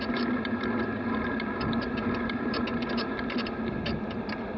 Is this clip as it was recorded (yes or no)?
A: no